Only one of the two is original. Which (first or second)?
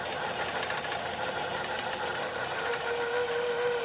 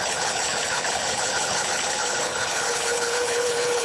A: first